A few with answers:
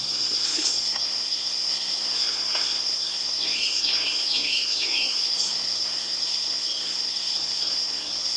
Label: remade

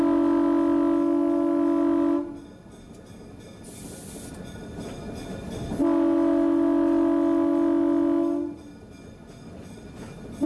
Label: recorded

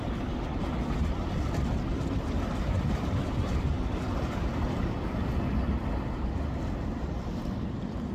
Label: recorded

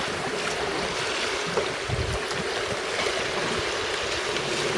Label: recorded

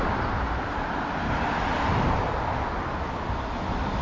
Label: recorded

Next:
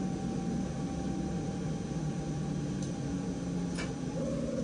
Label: recorded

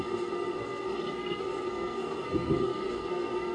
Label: remade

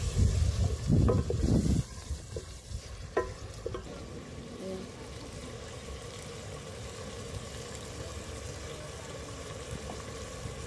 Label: recorded